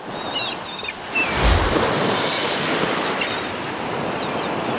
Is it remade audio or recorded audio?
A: recorded